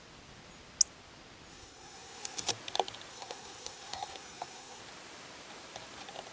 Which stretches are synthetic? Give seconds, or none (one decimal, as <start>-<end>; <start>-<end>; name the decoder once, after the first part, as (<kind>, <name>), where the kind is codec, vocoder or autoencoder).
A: 1.5-2.5 (codec, SNAC); 3.1-4.8